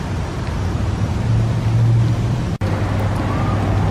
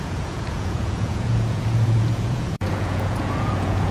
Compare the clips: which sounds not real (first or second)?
second